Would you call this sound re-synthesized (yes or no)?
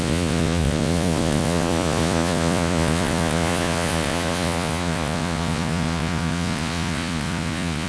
yes